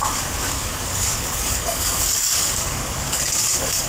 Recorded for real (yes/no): no